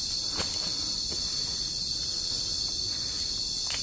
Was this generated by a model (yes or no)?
no